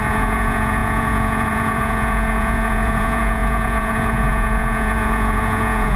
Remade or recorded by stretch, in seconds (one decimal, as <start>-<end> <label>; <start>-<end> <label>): 0.0-6.0 remade